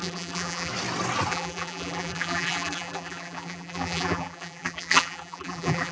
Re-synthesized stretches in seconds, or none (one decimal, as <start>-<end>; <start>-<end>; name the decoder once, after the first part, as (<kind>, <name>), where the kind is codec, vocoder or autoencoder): 0.0-0.7 (vocoder, BigVGAN v2); 1.3-5.9